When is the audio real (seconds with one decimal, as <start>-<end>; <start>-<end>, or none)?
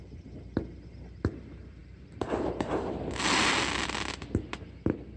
0.0-5.2